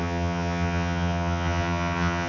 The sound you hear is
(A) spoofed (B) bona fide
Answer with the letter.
A